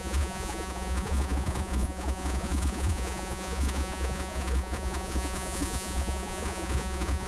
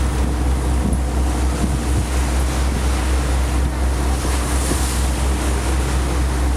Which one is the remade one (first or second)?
first